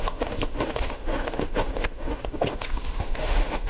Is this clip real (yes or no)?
no